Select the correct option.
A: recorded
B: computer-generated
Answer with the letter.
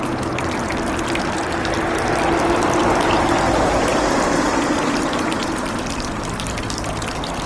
A